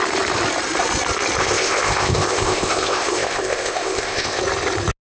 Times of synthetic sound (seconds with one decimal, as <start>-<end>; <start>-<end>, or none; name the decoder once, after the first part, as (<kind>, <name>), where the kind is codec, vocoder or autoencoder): 1.4-4.4 (codec, ZipCodec)